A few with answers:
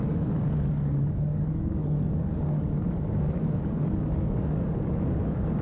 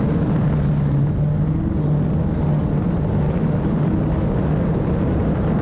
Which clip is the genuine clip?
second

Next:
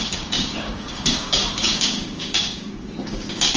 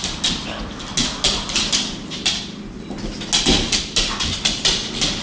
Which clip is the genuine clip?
second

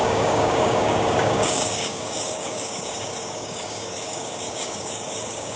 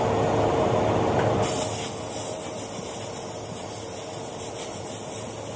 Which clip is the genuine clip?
second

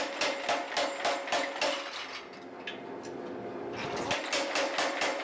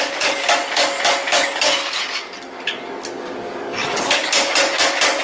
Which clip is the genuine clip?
first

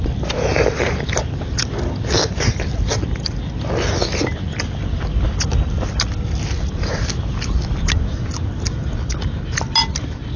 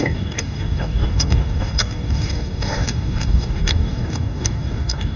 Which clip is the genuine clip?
first